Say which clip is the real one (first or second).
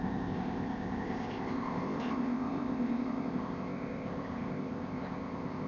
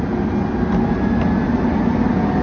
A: second